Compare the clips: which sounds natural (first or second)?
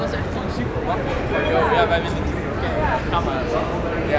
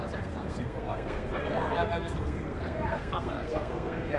first